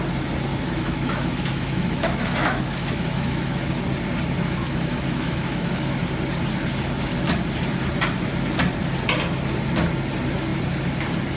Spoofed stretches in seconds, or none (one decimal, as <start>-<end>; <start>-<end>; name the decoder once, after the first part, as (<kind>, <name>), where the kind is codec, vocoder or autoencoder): 0.5-3.8 (autoencoder, DAC-VAE); 4.6-6.0